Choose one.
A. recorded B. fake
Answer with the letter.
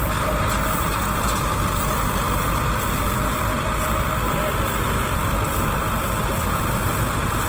A